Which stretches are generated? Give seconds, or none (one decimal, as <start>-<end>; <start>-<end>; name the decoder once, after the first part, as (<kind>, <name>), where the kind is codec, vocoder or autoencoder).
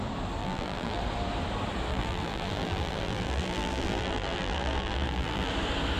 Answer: 0.4-1.0 (vocoder, BigVGAN v2); 1.9-5.5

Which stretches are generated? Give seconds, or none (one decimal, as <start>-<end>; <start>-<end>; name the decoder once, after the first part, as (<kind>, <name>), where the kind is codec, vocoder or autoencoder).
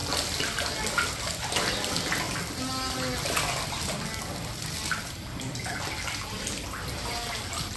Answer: none